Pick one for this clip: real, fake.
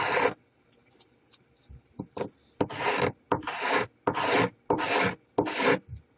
real